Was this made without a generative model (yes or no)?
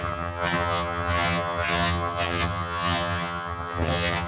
no